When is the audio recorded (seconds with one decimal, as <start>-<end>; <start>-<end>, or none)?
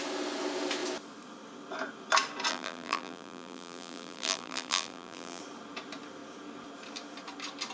0.0-2.5; 5.4-7.7